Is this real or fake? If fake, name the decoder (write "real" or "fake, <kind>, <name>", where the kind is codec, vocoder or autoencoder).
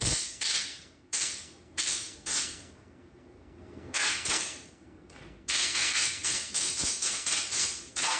fake, codec, SNAC